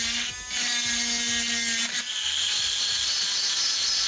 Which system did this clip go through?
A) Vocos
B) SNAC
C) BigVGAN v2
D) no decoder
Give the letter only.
D